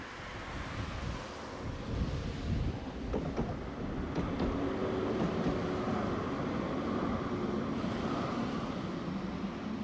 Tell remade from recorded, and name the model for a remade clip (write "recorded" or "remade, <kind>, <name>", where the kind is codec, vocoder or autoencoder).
recorded